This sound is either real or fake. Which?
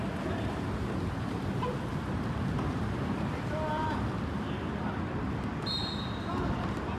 real